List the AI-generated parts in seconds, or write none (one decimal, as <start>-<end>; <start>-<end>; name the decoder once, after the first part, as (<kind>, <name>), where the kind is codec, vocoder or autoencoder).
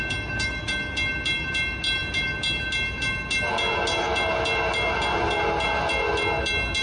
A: none